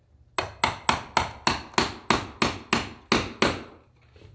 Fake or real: real